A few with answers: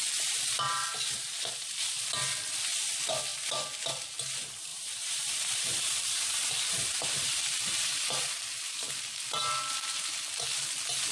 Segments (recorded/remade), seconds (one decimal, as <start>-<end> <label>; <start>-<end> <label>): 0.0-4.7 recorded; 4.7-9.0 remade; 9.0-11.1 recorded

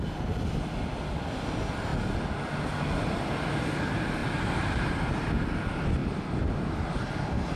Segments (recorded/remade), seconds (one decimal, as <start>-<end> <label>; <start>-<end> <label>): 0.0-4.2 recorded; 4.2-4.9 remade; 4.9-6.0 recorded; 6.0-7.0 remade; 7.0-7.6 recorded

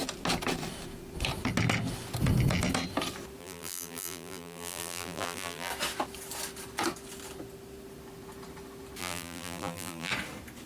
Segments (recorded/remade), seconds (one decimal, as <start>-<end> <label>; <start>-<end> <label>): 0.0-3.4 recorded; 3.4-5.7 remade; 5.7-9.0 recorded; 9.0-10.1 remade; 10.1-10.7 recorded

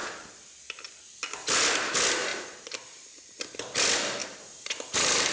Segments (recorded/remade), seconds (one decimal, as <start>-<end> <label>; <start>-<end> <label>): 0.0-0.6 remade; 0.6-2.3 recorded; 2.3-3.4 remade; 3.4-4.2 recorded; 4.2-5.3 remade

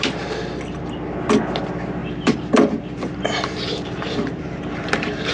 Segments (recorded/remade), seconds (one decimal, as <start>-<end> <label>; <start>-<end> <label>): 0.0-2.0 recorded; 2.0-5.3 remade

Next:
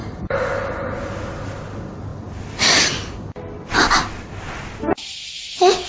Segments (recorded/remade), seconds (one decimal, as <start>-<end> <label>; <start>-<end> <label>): 0.0-0.6 remade; 0.6-5.9 recorded

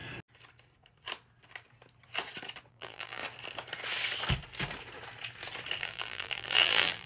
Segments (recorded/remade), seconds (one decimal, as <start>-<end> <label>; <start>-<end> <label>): 0.0-2.7 recorded; 2.7-3.2 remade; 3.2-5.8 recorded; 5.8-7.1 remade

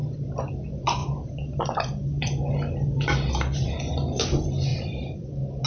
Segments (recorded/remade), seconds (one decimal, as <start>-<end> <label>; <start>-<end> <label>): 0.0-1.0 recorded; 1.0-3.3 remade; 3.3-4.7 recorded; 4.7-5.3 remade; 5.3-5.7 recorded